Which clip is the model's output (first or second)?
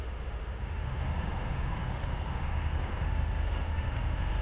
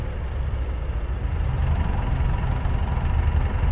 first